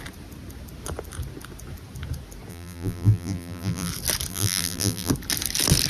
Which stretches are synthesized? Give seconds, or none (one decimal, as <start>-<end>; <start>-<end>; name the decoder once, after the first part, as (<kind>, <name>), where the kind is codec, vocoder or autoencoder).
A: 2.5-3.9 (vocoder, BigVGAN v2); 4.3-5.1